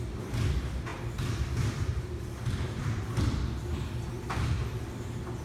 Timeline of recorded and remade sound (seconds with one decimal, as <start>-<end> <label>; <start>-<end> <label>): 0.0-5.4 recorded